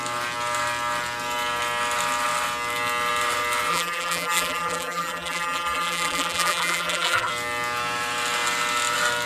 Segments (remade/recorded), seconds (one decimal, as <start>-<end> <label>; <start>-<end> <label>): 0.0-3.7 recorded; 3.7-7.3 remade; 7.3-9.3 recorded